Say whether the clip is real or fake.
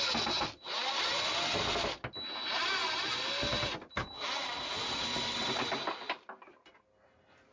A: real